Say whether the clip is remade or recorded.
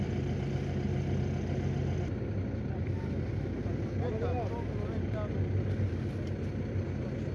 recorded